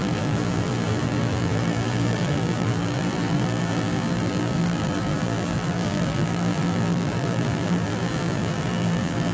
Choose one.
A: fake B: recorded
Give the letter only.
A